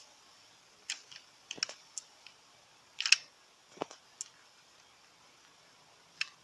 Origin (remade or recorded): recorded